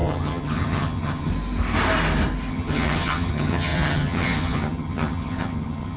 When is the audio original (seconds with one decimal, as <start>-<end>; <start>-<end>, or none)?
1.3-2.5